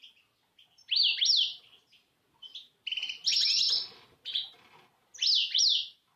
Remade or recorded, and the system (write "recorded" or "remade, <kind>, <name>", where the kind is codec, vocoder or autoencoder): recorded